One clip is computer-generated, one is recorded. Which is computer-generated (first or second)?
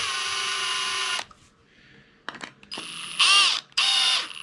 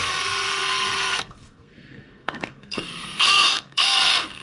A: second